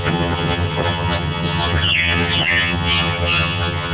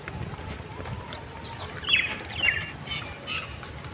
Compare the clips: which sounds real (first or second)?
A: second